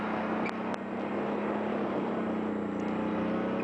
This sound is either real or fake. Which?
real